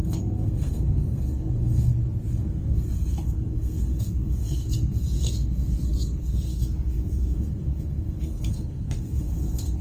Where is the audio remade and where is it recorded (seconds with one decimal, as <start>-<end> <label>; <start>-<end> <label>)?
0.0-1.9 remade; 1.9-2.4 recorded; 2.4-9.8 remade